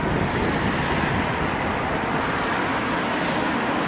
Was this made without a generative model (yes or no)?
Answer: yes